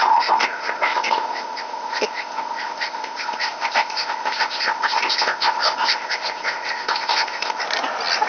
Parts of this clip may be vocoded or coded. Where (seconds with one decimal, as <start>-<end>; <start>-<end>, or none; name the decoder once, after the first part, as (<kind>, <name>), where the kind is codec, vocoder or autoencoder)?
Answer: 0.0-7.6 (codec, ZipCodec)